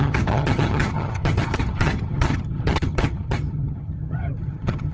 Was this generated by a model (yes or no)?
yes